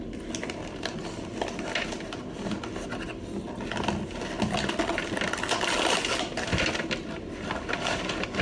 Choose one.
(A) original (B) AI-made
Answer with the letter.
A